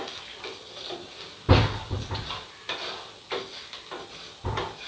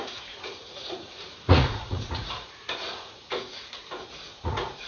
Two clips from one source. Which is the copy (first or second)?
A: second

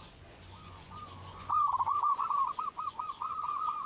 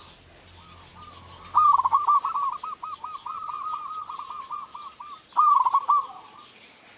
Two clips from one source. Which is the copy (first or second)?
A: first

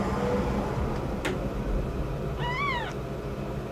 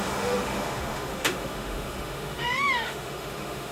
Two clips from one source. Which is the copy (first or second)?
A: second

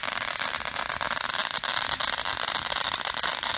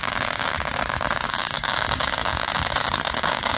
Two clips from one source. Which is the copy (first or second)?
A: second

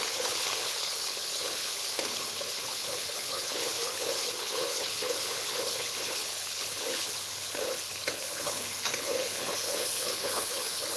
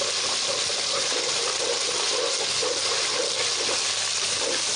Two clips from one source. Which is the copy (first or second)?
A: first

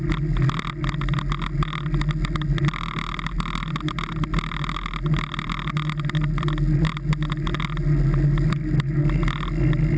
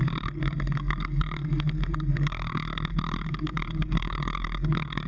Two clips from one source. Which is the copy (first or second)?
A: second